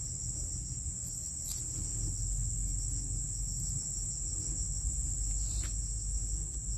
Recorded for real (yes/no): yes